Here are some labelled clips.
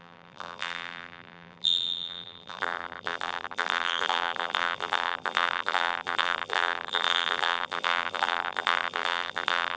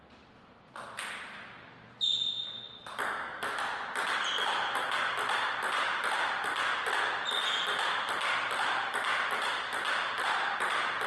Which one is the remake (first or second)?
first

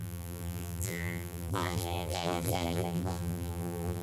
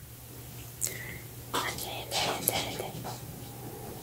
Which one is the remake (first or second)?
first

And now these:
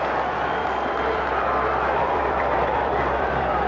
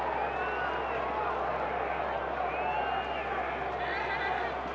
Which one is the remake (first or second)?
first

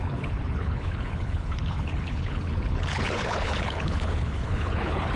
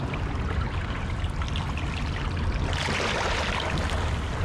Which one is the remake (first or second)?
first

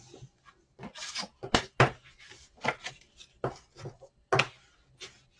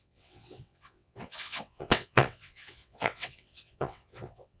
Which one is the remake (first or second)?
second